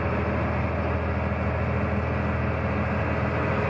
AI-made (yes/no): no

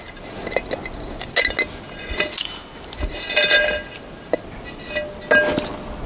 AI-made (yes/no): no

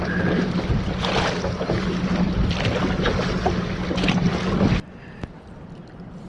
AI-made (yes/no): no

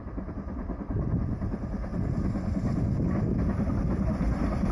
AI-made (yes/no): no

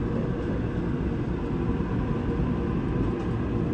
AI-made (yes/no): no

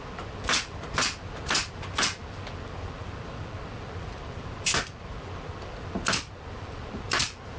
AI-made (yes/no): no